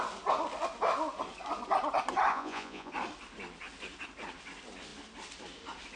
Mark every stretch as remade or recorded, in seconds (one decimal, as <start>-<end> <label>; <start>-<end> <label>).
0.0-2.3 recorded; 2.3-2.9 remade; 2.9-6.0 recorded